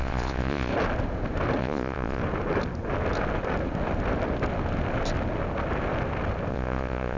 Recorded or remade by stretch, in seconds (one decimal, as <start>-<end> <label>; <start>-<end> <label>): 0.0-0.7 remade; 0.7-1.6 recorded; 1.6-2.2 remade; 2.2-6.5 recorded; 6.5-7.2 remade